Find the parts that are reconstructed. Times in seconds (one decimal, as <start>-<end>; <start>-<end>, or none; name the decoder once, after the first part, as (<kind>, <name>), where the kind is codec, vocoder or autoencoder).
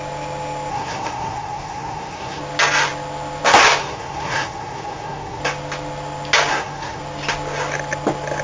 0.7-2.4 (codec, SNAC); 3.8-5.4; 6.5-7.0